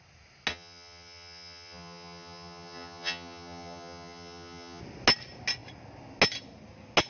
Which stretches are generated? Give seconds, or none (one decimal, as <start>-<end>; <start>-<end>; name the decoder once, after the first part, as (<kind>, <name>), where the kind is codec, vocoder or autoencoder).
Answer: 0.5-4.8 (vocoder, HiFi-GAN)